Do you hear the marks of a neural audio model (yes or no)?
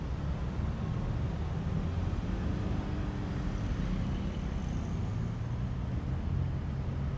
no